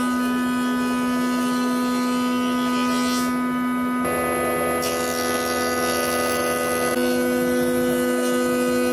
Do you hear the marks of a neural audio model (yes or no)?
no